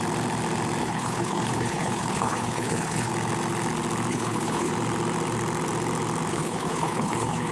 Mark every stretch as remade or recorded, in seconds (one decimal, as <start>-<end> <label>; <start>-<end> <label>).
0.0-0.8 recorded; 0.8-3.1 remade; 3.1-4.1 recorded; 4.1-4.7 remade; 4.7-6.3 recorded; 6.3-7.5 remade